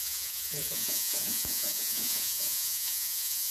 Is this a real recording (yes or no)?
no